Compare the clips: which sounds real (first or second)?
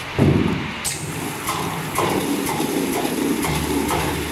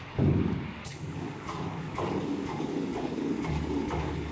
first